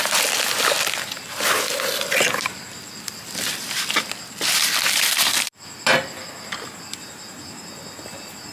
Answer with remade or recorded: recorded